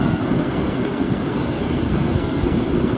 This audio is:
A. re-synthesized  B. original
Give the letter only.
A